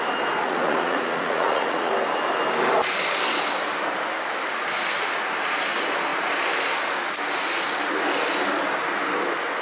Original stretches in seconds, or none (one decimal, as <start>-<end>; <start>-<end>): 0.0-0.4; 1.9-9.6